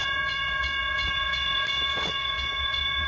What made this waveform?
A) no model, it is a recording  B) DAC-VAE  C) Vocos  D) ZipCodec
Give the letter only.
C